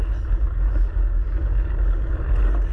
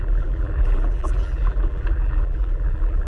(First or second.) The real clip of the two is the first